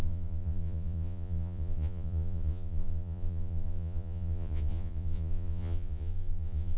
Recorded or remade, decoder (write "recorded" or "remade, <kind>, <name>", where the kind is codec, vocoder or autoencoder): remade, vocoder, Vocos